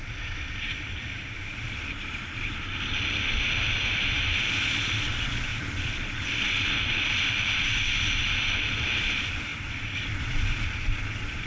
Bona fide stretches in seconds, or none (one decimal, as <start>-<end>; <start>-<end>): 4.2-5.1